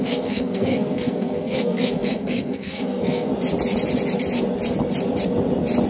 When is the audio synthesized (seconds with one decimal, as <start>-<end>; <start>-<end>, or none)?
0.0-3.3